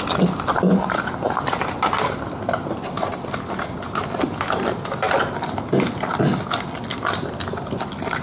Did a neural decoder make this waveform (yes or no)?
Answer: no